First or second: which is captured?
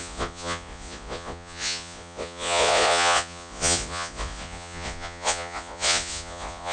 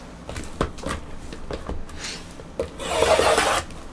second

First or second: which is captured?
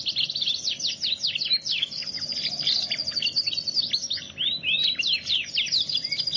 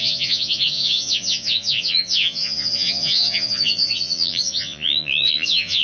first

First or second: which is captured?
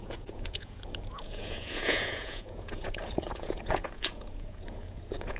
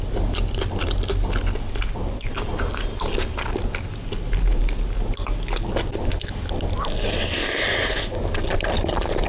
second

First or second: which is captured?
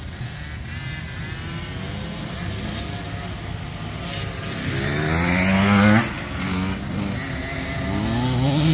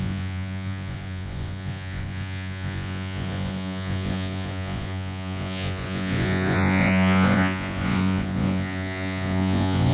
first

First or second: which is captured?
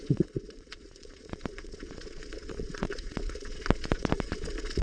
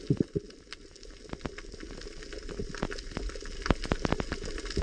second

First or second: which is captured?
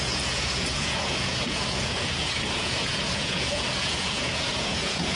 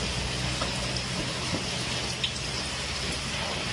second